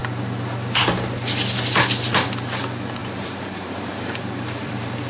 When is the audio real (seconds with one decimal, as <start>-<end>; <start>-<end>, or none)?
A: 0.0-3.0